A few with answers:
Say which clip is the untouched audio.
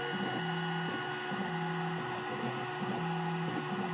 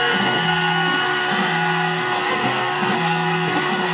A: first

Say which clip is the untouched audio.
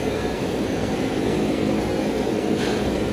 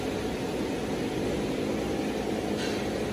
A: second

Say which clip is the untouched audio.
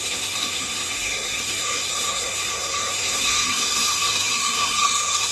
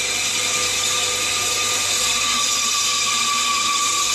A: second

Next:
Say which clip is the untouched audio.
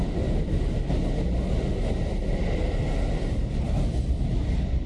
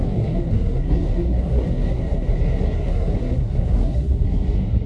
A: first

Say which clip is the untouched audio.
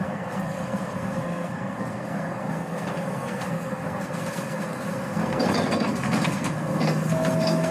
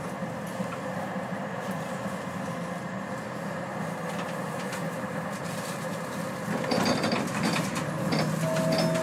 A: second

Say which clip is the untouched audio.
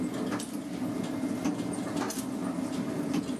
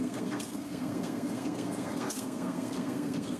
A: first